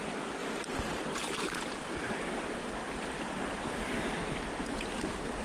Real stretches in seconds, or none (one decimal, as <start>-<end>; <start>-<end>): none